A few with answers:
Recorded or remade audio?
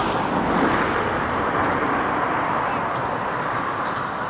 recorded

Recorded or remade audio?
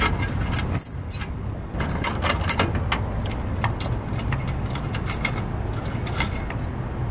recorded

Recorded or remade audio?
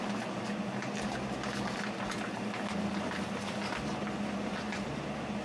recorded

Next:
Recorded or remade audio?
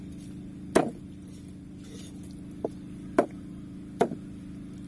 recorded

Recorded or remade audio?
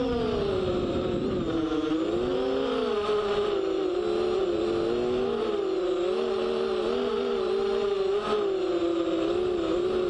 recorded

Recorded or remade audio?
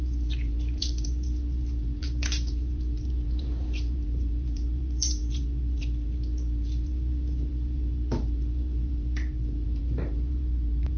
remade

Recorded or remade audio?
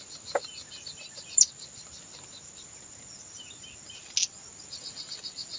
recorded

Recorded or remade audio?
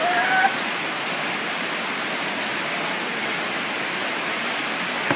recorded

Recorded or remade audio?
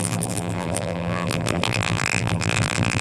remade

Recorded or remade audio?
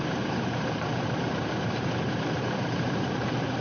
remade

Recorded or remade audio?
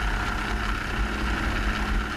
recorded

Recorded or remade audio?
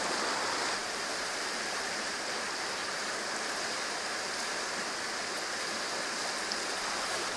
recorded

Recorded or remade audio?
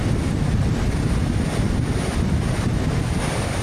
recorded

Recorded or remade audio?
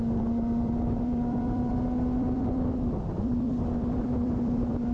remade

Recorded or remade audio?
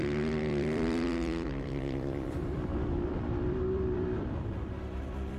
remade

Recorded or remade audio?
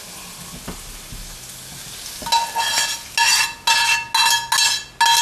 recorded